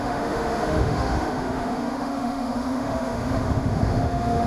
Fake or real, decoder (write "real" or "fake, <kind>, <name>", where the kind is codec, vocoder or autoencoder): fake, autoencoder, DAC-VAE